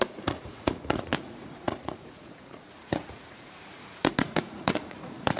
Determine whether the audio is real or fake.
fake